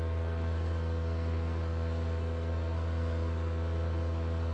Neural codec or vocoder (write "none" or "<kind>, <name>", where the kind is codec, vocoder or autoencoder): codec, SNAC